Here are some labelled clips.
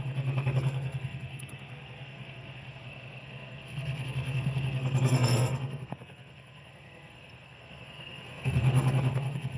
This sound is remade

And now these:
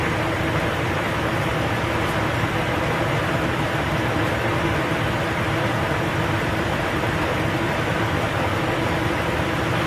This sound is recorded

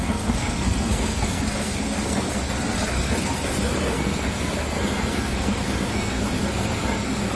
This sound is remade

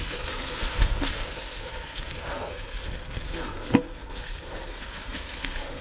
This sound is remade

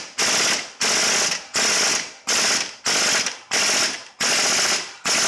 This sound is recorded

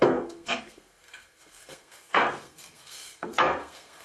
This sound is remade